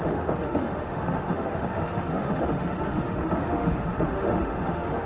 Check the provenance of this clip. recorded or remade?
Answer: remade